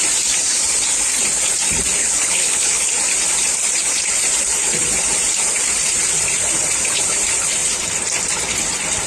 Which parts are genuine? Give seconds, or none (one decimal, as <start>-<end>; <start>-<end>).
0.0-2.0; 2.9-9.1